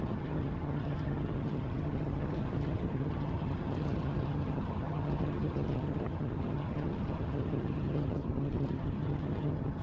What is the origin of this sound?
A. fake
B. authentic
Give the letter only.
A